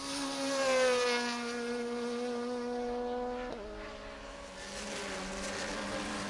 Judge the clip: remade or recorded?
recorded